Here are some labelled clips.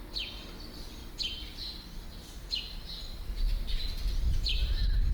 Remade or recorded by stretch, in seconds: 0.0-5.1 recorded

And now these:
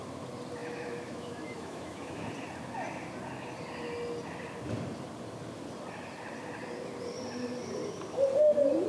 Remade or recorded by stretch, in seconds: 0.0-0.6 recorded; 0.6-2.3 remade; 2.3-8.9 recorded

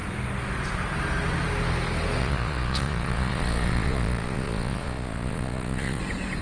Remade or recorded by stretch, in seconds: 0.0-2.2 recorded; 2.2-6.0 remade; 6.0-6.4 recorded

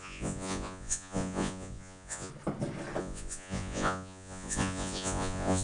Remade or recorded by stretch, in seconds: 0.0-2.3 remade; 2.3-3.0 recorded; 3.0-5.6 remade

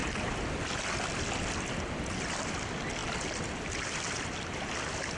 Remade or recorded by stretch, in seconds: 0.0-5.2 recorded

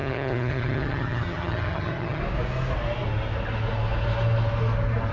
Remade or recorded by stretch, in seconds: 0.0-2.2 remade; 2.2-5.1 recorded